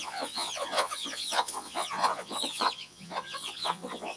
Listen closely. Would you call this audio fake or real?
fake